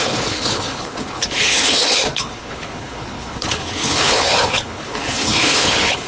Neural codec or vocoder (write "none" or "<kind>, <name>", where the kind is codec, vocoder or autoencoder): codec, HILCodec